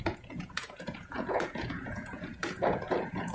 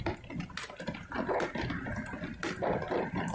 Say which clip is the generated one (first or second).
first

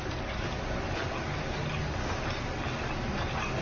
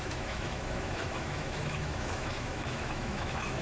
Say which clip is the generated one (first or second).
second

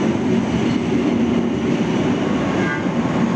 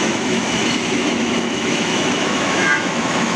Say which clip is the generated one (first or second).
second